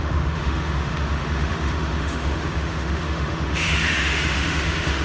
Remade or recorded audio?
remade